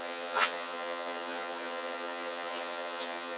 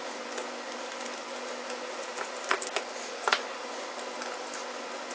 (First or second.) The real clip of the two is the second